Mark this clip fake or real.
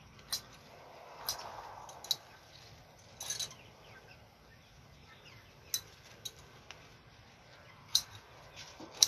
real